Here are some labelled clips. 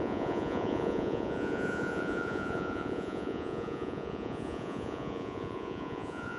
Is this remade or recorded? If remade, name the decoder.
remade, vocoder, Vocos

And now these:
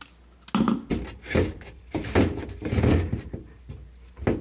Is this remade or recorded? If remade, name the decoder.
recorded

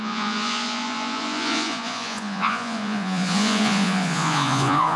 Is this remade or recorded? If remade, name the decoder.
remade, vocoder, Vocos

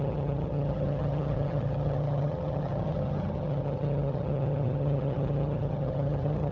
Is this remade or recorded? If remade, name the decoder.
remade, vocoder, HiFi-GAN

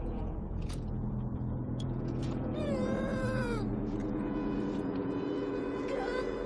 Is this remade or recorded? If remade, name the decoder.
remade, vocoder, Vocos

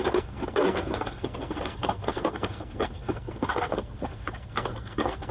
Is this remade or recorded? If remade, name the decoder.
remade, codec, SNAC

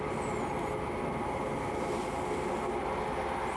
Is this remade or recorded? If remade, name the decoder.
recorded